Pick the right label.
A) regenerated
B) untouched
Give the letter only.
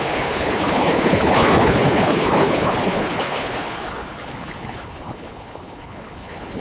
A